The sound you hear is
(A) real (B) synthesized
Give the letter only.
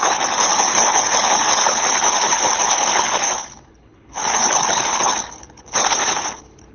B